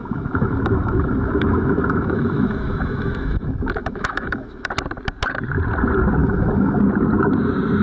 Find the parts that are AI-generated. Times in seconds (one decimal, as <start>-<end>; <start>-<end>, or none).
0.0-4.7; 6.2-6.8